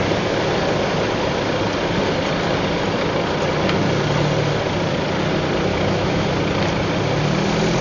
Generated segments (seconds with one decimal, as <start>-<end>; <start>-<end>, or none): 5.7-6.3